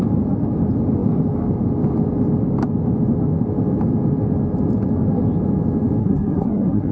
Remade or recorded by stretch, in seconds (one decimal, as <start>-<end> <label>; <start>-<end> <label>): 0.0-6.0 recorded; 6.0-6.9 remade